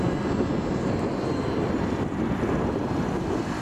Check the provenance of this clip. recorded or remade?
recorded